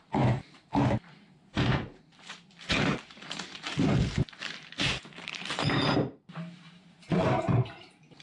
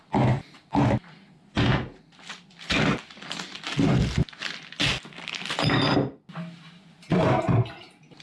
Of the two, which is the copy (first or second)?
first